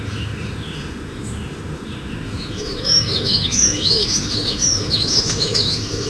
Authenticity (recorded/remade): remade